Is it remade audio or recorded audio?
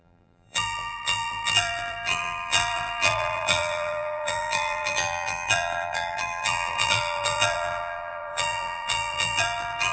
remade